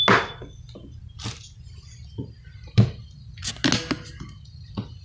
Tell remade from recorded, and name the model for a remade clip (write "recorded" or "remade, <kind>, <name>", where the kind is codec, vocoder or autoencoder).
recorded